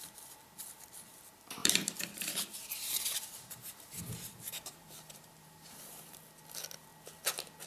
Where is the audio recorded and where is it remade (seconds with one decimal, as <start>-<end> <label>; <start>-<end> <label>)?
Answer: 0.0-1.6 recorded; 1.6-6.2 remade; 6.2-7.7 recorded